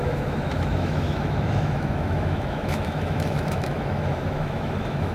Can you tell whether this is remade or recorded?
remade